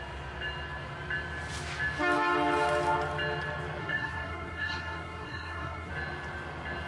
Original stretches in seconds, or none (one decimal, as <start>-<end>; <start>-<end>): 0.0-3.8; 5.9-6.9